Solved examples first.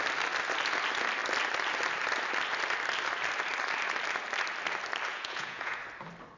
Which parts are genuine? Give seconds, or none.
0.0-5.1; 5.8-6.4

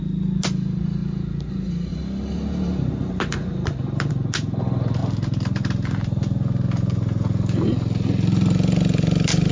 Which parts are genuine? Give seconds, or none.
0.0-9.5

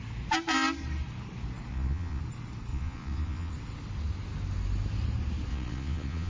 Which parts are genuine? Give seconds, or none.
0.0-1.7; 2.2-2.7; 3.5-5.5

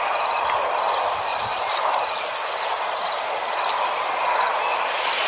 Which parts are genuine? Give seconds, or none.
0.0-5.3

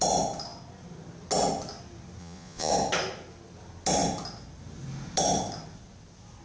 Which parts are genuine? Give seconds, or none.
0.0-2.2; 2.7-6.4

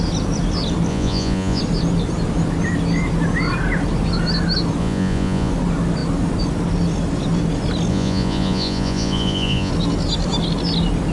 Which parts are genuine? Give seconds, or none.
0.0-0.9; 1.6-4.8; 5.5-7.9; 9.7-11.1